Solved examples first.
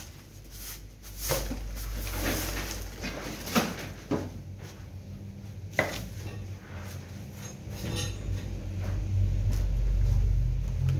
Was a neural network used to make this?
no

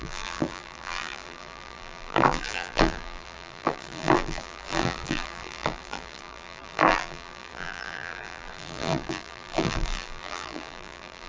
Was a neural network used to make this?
yes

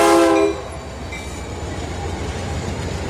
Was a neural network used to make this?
no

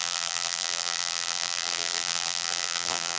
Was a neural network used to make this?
yes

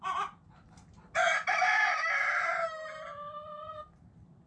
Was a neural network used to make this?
no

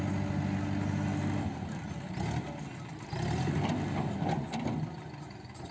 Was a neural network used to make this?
no